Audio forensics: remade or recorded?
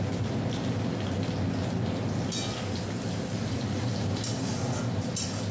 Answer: recorded